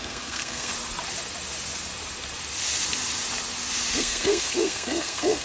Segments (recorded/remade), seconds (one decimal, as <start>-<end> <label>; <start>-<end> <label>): 0.0-0.7 remade; 0.7-3.9 recorded; 3.9-5.4 remade